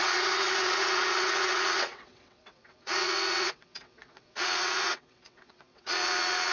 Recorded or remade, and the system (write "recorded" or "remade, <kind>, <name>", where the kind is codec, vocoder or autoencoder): remade, vocoder, WaveNeXt